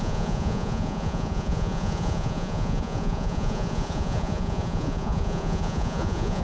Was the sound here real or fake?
fake